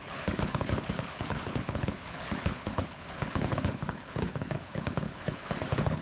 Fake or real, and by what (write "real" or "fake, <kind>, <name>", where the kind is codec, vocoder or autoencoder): fake, codec, HILCodec